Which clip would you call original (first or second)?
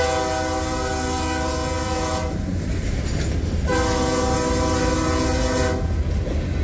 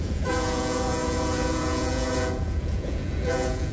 first